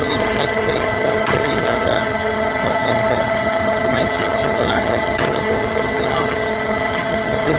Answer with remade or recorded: remade